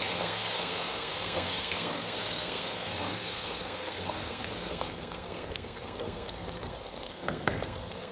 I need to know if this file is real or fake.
fake